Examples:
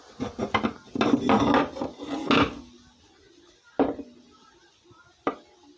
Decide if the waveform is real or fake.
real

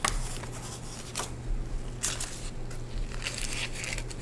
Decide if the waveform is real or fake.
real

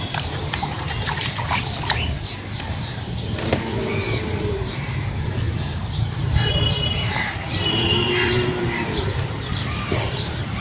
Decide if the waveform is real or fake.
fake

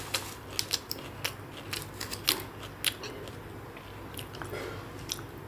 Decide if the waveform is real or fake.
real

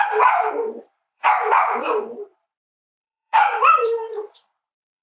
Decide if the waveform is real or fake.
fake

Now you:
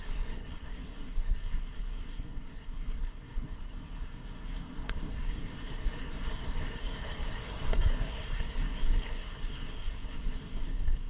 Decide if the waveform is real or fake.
fake